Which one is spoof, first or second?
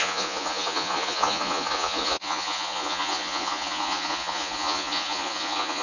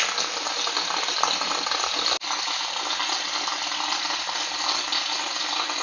first